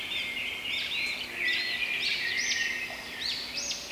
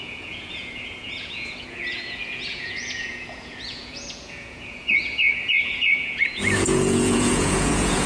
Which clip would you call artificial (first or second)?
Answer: second